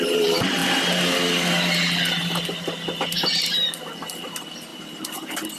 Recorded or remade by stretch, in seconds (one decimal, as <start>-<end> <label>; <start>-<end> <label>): 0.0-0.6 remade; 0.6-3.0 recorded; 3.0-5.6 remade